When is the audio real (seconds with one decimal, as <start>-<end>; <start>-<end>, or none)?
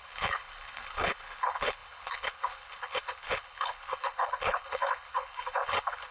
none